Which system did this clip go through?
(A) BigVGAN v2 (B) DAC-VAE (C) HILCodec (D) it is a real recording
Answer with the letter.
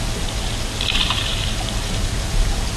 D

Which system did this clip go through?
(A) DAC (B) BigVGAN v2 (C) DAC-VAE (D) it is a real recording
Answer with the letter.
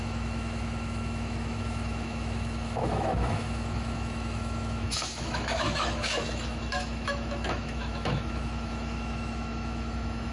C